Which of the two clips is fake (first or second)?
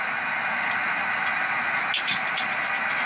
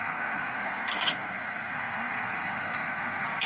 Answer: second